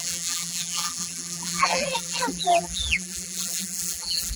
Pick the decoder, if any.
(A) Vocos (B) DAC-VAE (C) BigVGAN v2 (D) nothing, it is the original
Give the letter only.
C